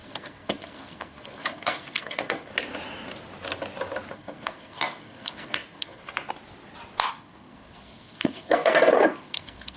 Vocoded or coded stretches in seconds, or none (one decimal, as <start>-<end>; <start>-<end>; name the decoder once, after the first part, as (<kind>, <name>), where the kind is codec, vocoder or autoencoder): 0.0-2.5 (codec, SNAC); 4.1-6.0; 7.1-9.8